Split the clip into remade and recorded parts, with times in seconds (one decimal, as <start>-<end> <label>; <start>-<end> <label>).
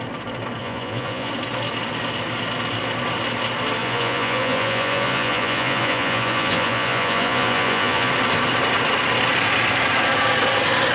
0.0-0.6 recorded; 0.6-1.3 remade; 1.3-3.8 recorded; 3.8-8.1 remade; 8.1-10.9 recorded